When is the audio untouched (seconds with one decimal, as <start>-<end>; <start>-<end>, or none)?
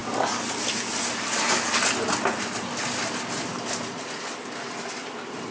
0.0-5.5